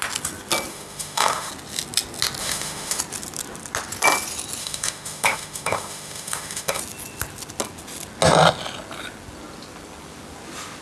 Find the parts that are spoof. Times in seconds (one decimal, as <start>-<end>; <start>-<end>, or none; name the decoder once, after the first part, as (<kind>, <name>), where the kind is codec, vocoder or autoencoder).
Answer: 0.7-1.5 (autoencoder, DAC-VAE); 2.4-3.0; 4.6-6.8